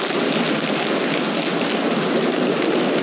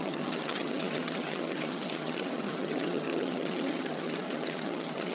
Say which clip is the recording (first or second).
first